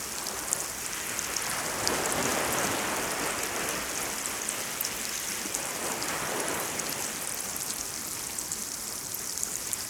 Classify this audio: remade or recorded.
recorded